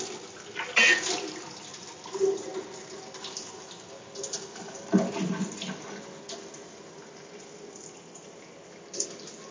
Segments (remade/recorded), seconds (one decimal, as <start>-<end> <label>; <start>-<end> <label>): 0.0-4.5 recorded; 4.5-8.8 remade; 8.8-9.5 recorded